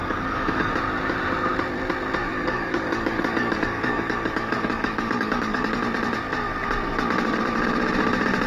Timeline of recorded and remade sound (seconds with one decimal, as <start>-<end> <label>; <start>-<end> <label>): 0.0-0.7 remade; 0.7-2.3 recorded; 2.3-5.8 remade; 5.8-8.5 recorded